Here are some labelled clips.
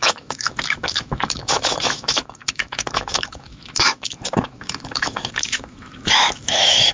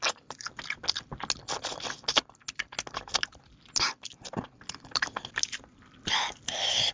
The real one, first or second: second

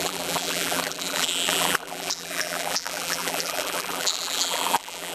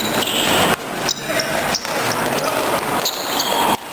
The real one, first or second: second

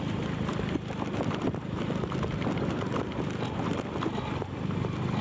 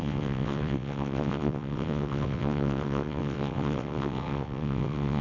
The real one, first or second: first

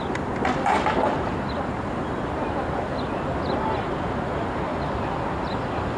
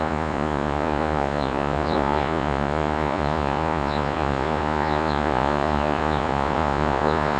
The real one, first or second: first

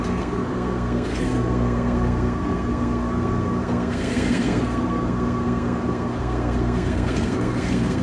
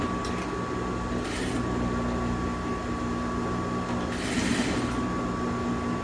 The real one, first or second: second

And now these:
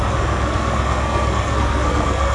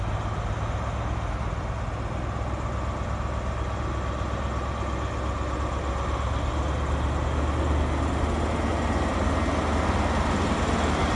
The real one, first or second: second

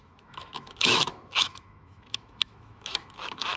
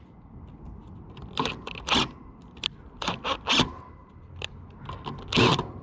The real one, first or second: second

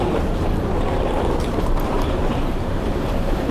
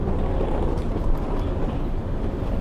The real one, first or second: second